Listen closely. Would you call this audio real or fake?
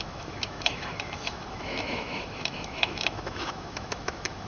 fake